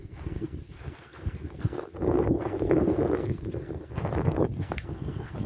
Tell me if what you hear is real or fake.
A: fake